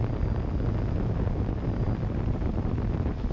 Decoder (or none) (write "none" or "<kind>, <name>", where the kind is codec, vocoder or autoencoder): none